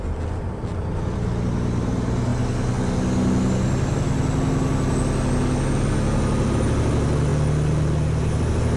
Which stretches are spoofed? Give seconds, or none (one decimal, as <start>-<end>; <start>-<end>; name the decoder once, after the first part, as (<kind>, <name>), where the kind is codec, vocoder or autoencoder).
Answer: none